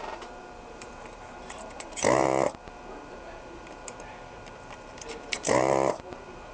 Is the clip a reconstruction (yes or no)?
yes